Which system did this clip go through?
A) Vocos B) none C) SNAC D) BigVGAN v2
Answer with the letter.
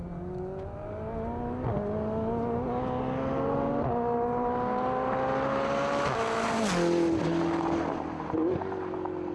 B